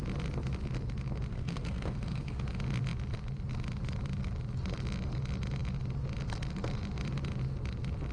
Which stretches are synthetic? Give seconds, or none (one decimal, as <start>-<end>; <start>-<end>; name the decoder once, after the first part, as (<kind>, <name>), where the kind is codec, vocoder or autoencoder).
1.3-2.4 (codec, SNAC)